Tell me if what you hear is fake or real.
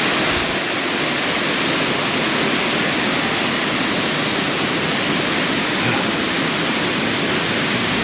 real